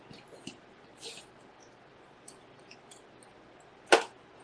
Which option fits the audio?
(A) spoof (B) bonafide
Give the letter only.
B